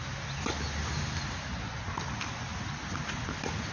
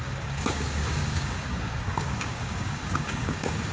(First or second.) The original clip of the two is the first